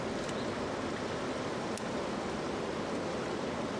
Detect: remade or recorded recorded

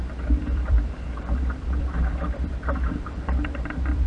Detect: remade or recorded remade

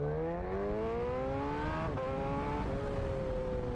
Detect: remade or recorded recorded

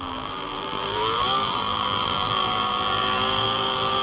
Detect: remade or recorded remade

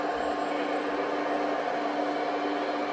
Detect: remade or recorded recorded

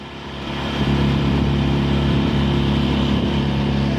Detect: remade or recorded remade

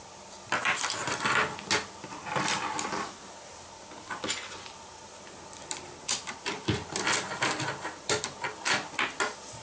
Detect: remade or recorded recorded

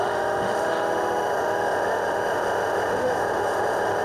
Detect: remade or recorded remade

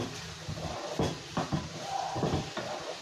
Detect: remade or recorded remade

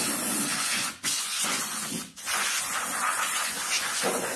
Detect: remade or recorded remade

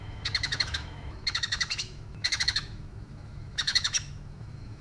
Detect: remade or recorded remade